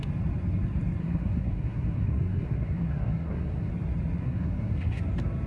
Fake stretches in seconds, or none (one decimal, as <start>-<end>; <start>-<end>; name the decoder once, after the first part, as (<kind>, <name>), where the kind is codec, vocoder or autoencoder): 1.0-3.7 (codec, SNAC); 4.2-5.0